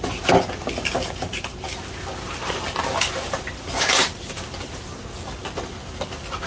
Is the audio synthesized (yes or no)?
no